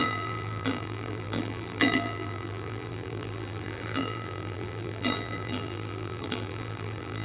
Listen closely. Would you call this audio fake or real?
fake